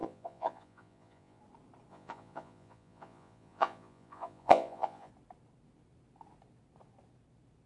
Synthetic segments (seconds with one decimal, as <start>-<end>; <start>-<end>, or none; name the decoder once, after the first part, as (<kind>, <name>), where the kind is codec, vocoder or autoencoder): 0.0-1.4 (vocoder, Vocos); 1.9-5.1